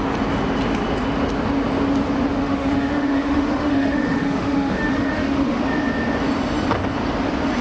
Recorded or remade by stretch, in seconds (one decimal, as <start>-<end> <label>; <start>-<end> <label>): 0.0-2.4 recorded; 2.4-5.6 remade; 5.6-7.6 recorded